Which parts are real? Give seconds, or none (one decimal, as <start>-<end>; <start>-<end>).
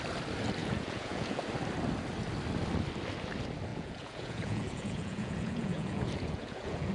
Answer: 0.0-0.6; 1.4-3.7